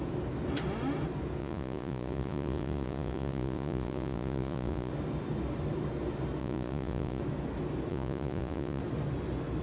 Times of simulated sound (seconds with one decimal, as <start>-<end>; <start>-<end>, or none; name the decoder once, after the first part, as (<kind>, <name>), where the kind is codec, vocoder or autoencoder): 1.4-4.9 (vocoder, Vocos); 6.4-7.2; 7.9-8.8